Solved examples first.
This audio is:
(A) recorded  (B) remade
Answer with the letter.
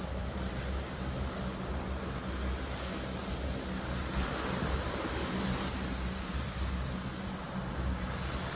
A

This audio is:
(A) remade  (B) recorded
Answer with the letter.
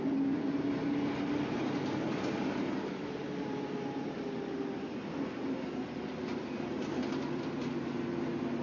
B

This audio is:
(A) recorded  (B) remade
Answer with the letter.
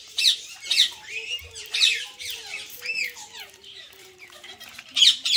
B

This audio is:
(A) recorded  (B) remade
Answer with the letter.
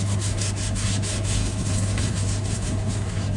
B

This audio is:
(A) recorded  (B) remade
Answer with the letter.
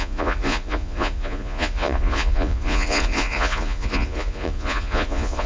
B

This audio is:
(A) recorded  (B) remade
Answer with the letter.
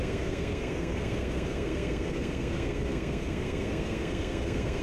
B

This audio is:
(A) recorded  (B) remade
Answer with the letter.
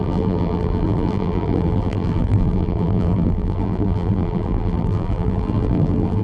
B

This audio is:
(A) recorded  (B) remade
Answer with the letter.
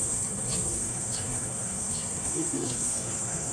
B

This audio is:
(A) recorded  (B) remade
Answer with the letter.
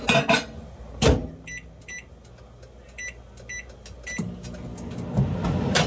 A